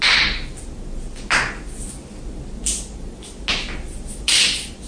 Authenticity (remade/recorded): recorded